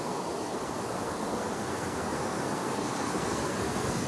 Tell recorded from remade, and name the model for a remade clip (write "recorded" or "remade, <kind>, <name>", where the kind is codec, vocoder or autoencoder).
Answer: remade, codec, SNAC